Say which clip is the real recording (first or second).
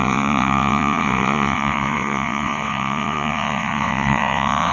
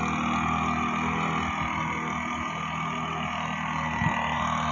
second